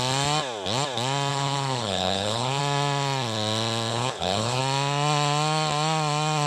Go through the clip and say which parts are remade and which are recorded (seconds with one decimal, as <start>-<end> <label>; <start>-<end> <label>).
0.0-1.3 recorded; 1.3-2.6 remade; 2.6-3.9 recorded; 3.9-4.6 remade; 4.6-6.5 recorded

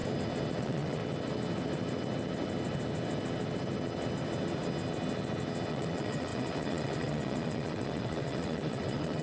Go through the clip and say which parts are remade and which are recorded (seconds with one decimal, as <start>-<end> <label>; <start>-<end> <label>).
0.0-0.6 recorded; 0.6-1.0 remade; 1.0-5.7 recorded; 5.7-9.2 remade

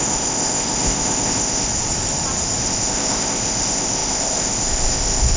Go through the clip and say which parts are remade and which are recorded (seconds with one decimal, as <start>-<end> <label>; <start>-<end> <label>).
0.0-1.7 remade; 1.7-2.6 recorded; 2.6-5.4 remade

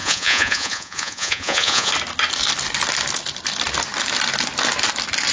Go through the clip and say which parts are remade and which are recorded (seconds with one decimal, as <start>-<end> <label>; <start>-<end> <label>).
0.0-1.9 remade; 1.9-5.3 recorded

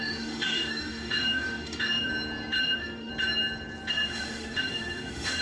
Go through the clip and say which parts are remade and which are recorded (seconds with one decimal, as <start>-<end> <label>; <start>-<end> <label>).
0.0-2.1 remade; 2.1-2.6 recorded; 2.6-3.1 remade; 3.1-3.9 recorded; 3.9-5.4 remade

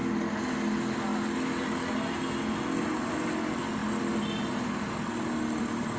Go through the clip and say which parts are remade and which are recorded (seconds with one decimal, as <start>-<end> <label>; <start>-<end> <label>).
0.0-6.0 recorded

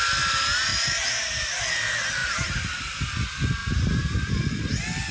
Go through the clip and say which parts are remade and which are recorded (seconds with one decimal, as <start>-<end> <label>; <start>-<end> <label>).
0.0-0.7 recorded; 0.7-1.6 remade; 1.6-2.2 recorded; 2.2-2.8 remade; 2.8-3.6 recorded; 3.6-4.3 remade; 4.3-5.1 recorded

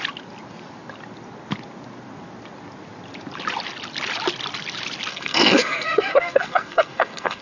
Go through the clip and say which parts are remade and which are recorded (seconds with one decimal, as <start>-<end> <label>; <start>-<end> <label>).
0.0-5.1 recorded; 5.1-7.4 remade